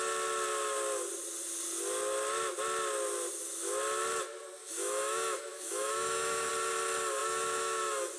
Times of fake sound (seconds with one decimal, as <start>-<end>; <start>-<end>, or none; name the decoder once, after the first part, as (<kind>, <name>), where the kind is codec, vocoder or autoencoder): 4.6-6.5 (autoencoder, DAC-VAE); 7.2-8.2